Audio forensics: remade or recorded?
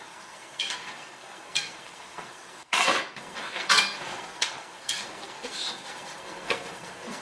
remade